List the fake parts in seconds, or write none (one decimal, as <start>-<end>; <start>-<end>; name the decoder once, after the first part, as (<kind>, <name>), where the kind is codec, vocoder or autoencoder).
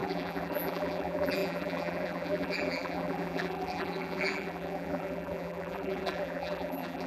0.0-7.1 (vocoder, BigVGAN v2)